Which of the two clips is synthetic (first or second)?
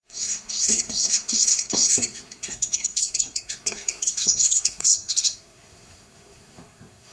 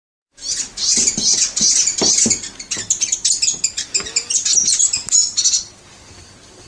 first